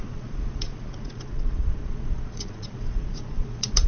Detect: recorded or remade remade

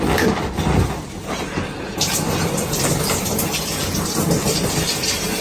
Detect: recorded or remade recorded